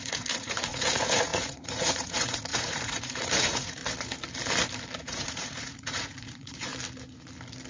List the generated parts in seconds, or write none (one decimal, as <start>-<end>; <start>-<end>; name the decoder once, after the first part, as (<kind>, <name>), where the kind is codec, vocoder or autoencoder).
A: 0.0-3.8 (vocoder, Vocos); 5.0-6.7